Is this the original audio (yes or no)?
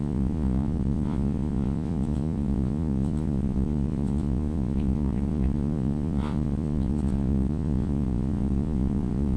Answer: no